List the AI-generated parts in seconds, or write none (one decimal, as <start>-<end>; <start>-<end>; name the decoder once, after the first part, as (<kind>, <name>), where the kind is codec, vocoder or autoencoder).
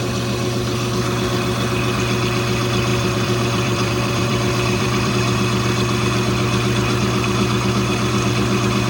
2.9-5.1 (vocoder, BigVGAN v2)